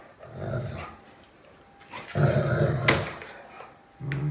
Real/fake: real